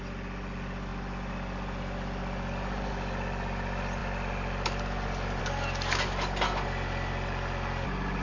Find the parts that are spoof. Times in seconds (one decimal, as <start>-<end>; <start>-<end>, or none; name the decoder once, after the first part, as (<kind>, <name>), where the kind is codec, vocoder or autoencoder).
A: none